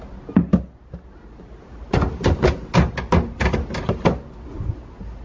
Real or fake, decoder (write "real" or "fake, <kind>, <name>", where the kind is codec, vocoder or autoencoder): real